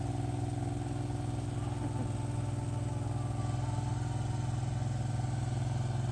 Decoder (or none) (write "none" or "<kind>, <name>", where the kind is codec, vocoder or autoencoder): none